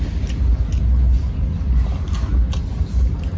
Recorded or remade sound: recorded